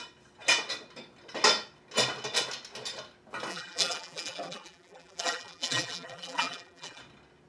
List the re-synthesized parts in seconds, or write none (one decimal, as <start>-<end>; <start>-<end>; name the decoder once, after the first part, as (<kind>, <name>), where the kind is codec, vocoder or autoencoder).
3.5-7.0 (vocoder, BigVGAN v2)